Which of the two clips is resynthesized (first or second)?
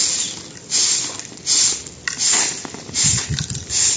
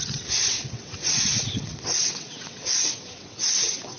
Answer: second